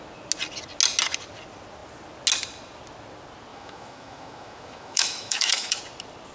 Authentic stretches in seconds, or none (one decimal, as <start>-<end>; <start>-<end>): 0.0-3.5; 5.8-6.3

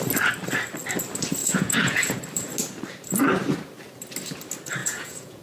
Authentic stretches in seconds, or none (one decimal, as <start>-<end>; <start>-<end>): 0.0-1.4; 2.2-4.8

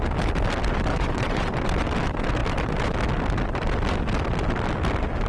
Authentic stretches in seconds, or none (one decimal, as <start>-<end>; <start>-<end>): 0.0-0.9; 1.5-5.3

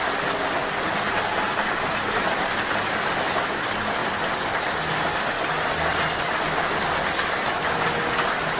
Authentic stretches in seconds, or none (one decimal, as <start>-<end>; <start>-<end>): 0.0-8.6

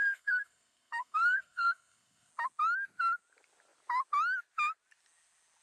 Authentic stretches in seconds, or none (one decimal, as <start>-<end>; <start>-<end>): 2.3-5.6